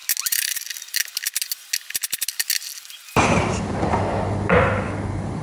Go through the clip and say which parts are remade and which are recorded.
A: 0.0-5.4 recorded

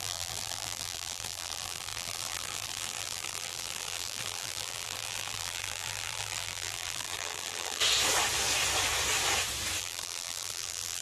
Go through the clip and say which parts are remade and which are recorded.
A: 0.0-7.8 remade; 7.8-9.8 recorded; 9.8-11.0 remade

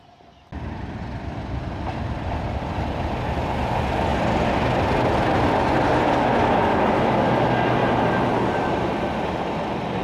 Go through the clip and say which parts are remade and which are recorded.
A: 0.0-7.8 recorded; 7.8-8.9 remade; 8.9-10.0 recorded

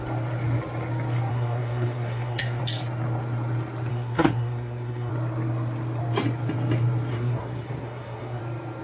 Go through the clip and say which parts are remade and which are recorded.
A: 0.0-1.3 recorded; 1.3-2.6 remade; 2.6-3.9 recorded; 3.9-5.1 remade; 5.1-7.1 recorded; 7.1-8.4 remade; 8.4-8.8 recorded